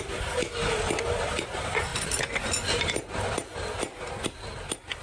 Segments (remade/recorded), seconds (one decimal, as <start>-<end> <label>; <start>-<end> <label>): 0.0-5.0 recorded